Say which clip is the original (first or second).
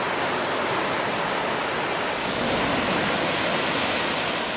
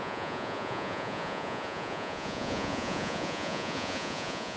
first